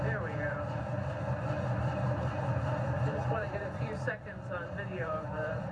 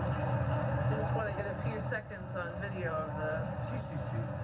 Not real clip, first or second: first